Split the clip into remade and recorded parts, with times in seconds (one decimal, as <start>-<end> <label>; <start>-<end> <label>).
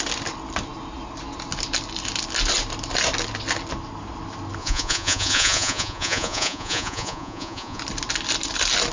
0.0-4.6 recorded; 4.6-7.8 remade; 7.8-8.9 recorded